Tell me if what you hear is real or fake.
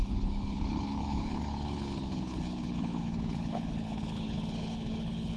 fake